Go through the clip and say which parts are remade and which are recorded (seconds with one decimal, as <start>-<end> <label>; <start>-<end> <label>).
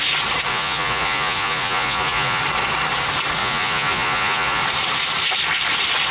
0.0-0.5 recorded; 0.5-2.4 remade; 2.4-3.4 recorded; 3.4-4.6 remade; 4.6-6.1 recorded